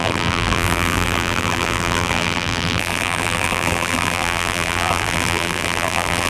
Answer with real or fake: fake